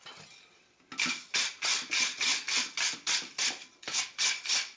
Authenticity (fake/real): real